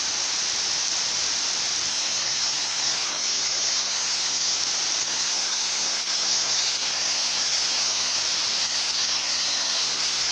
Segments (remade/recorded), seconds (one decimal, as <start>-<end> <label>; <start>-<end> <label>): 0.0-1.9 recorded; 1.9-4.6 remade; 4.6-5.0 recorded; 5.0-8.2 remade; 8.2-8.6 recorded; 8.6-10.3 remade